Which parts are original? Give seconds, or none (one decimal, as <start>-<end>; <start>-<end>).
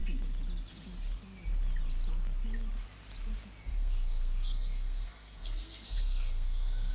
0.0-3.7